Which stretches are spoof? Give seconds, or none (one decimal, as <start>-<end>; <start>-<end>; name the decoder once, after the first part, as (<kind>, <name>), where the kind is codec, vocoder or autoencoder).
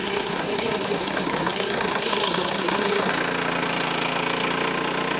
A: 0.0-3.1 (codec, SNAC)